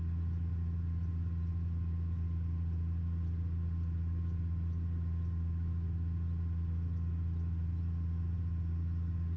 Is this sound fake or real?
real